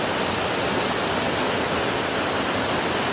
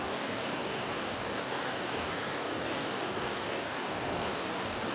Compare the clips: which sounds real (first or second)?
first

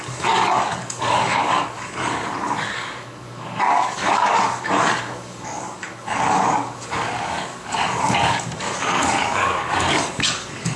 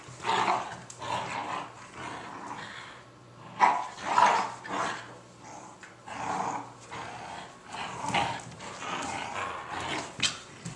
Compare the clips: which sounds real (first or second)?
second